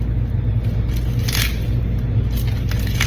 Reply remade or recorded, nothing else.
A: recorded